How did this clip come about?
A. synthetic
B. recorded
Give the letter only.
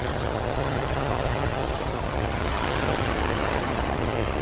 A